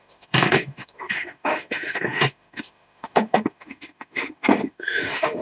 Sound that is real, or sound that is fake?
fake